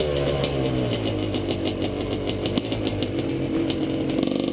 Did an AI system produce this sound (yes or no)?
no